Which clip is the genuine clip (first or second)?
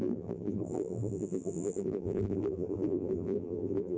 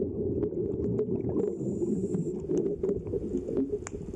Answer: second